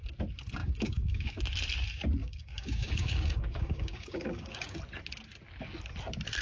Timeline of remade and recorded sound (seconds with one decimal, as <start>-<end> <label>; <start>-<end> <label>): 0.0-0.6 recorded; 0.6-1.4 remade; 1.4-2.2 recorded; 2.2-4.8 remade; 4.8-6.4 recorded